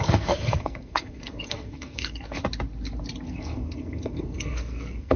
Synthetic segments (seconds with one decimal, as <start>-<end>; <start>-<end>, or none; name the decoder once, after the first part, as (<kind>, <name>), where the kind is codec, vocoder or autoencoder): 0.0-2.4 (codec, SNAC); 3.3-5.2